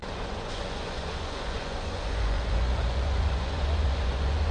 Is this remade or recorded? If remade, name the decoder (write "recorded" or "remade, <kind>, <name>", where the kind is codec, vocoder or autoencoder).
remade, vocoder, Vocos